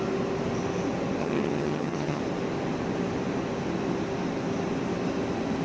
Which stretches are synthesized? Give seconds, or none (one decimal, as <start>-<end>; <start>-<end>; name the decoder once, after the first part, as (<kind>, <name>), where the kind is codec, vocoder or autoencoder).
1.2-2.2 (vocoder, HiFi-GAN)